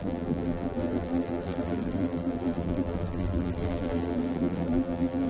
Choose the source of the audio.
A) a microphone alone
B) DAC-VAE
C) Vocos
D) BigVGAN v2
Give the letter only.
D